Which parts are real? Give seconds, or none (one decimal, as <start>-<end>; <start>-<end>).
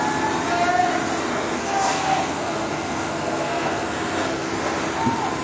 0.0-1.3; 4.5-5.4